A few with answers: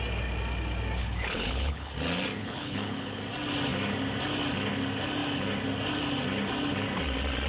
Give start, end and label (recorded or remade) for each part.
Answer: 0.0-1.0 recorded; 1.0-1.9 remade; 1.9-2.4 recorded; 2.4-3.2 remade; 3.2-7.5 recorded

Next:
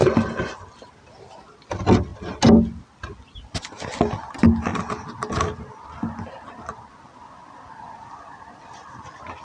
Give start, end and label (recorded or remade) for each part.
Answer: 0.0-9.4 recorded

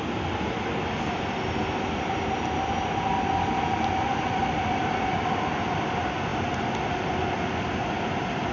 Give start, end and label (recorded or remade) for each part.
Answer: 0.0-8.5 recorded

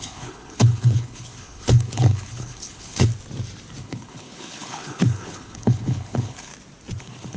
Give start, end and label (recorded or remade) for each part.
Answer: 0.0-3.1 remade; 3.1-3.8 recorded; 3.8-6.5 remade; 6.5-7.0 recorded; 7.0-7.4 remade

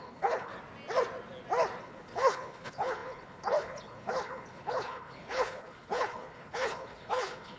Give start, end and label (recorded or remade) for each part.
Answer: 0.0-0.5 remade; 0.5-1.8 recorded; 1.8-7.6 remade